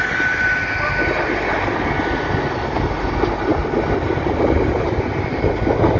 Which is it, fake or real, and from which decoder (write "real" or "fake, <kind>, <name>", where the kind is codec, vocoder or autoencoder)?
real